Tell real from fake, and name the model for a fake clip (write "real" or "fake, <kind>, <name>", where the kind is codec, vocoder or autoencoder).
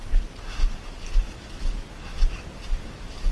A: real